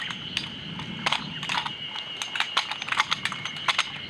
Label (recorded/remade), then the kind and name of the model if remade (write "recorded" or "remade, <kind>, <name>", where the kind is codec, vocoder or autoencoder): recorded